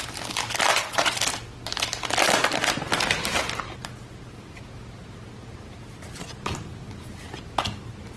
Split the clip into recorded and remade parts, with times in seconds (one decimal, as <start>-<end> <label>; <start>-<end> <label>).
0.0-0.7 recorded; 0.7-1.2 remade; 1.2-8.2 recorded